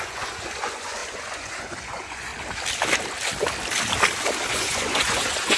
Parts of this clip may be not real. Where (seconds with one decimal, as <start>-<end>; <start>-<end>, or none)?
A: 0.0-2.3; 4.5-5.6